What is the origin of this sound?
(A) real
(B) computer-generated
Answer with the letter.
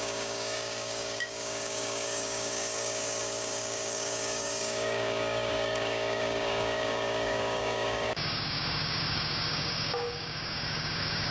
B